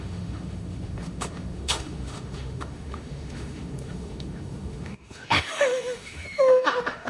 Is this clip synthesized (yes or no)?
yes